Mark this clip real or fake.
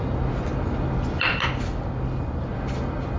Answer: real